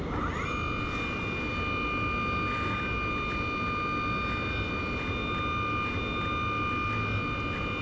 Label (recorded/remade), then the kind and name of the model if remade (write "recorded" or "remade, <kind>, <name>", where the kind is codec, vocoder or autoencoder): recorded